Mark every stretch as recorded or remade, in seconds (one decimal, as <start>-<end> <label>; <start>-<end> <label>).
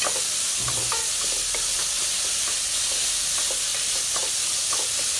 0.0-5.2 recorded